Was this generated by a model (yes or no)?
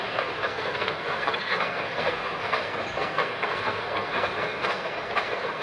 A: yes